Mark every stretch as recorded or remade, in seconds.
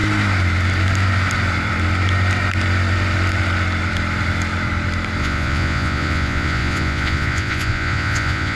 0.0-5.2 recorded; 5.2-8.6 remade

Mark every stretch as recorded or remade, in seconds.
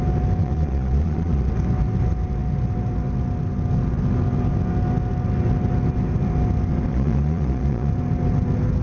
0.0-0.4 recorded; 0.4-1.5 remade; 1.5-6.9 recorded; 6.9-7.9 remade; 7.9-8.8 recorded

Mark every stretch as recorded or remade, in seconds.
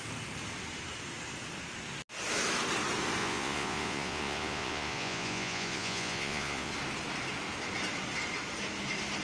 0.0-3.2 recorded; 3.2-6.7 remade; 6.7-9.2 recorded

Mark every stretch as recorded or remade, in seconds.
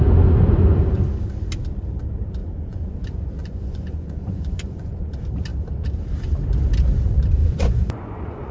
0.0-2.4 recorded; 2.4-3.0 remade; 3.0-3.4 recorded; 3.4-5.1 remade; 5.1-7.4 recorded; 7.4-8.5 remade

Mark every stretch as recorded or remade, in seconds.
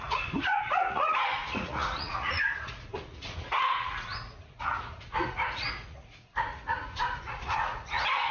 0.0-8.3 remade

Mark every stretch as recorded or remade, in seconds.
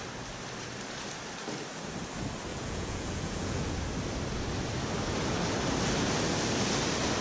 0.0-2.5 recorded; 2.5-3.7 remade; 3.7-7.2 recorded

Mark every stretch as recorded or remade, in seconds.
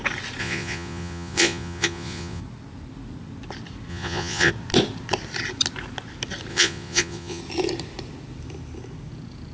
0.0-0.4 recorded; 0.4-2.4 remade; 2.4-3.9 recorded; 3.9-4.5 remade; 4.5-6.5 recorded; 6.5-7.4 remade; 7.4-9.5 recorded